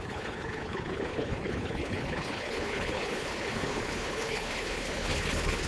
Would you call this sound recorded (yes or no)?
no